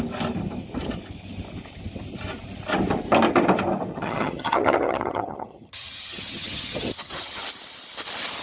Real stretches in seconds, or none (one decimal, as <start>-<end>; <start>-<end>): 0.0-3.9; 7.4-8.4